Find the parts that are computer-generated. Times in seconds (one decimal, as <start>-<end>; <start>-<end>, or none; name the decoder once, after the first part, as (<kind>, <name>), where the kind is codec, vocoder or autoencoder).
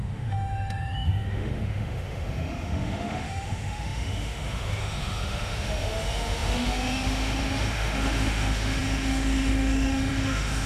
0.0-10.7 (autoencoder, DAC-VAE)